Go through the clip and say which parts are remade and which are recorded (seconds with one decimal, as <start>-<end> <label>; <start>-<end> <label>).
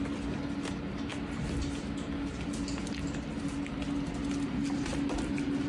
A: 0.0-5.7 recorded